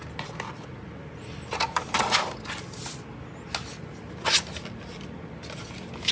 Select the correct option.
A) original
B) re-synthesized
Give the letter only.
A